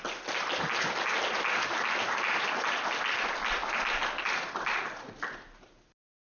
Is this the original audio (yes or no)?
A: yes